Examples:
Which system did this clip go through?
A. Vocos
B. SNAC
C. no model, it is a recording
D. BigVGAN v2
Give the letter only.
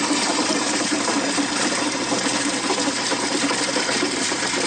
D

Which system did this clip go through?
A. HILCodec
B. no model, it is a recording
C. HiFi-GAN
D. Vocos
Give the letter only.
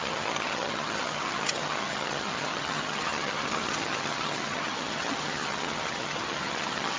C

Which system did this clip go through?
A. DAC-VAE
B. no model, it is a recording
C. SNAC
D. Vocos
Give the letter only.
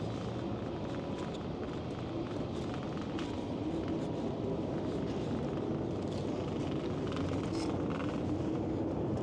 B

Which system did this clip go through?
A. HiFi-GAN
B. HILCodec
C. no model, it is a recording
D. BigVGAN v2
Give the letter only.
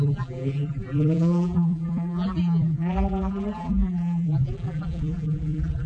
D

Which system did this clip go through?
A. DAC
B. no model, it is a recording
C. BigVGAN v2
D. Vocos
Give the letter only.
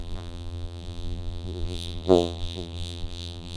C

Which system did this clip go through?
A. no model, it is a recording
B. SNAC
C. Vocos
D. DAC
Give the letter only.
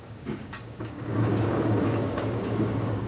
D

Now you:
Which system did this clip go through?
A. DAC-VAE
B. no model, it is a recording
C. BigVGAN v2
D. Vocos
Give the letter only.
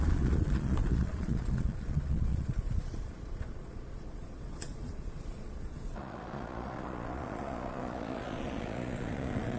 D